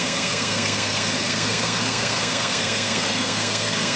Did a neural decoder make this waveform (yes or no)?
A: yes